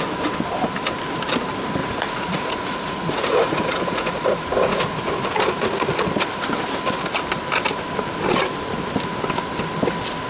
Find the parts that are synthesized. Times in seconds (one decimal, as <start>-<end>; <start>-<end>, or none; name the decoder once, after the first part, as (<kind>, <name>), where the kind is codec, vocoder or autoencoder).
1.8-5.3 (vocoder, Vocos)